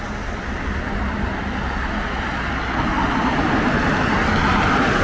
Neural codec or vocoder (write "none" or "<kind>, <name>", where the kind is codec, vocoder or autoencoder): none